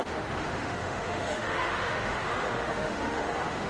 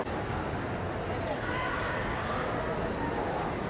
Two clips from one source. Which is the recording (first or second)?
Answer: second